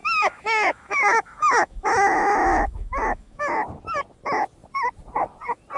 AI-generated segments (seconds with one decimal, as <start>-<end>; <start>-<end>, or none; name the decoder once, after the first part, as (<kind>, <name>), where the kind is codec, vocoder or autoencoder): 0.0-3.5 (autoencoder, DAC-VAE)